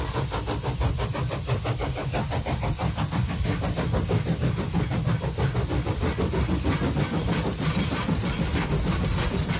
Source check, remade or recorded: recorded